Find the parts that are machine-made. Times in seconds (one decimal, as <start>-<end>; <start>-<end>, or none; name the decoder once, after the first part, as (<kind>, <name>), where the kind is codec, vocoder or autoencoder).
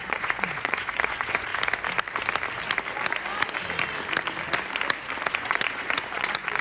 0.0-1.5 (vocoder, Vocos); 5.3-6.6